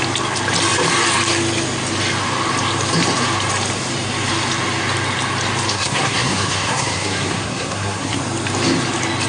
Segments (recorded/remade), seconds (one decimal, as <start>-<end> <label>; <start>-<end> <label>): 0.0-5.7 recorded; 5.7-8.2 remade; 8.2-9.3 recorded